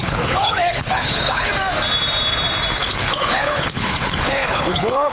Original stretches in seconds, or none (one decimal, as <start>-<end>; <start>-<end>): 1.5-2.8

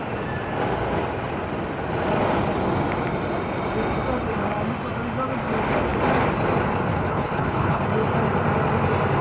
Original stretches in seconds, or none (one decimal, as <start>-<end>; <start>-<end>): 0.0-6.9; 7.8-9.2

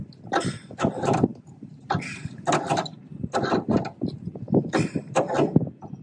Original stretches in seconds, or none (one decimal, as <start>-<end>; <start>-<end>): 0.0-6.0

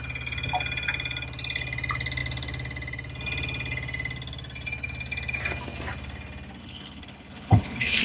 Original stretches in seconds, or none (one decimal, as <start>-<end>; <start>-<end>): 0.0-6.6

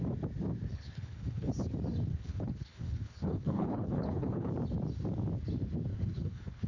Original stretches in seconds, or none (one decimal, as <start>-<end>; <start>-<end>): 0.0-0.7; 1.5-2.1; 4.5-5.9